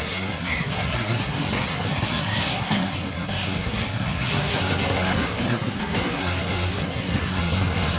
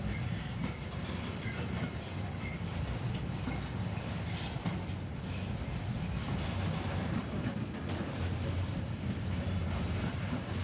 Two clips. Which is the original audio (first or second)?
second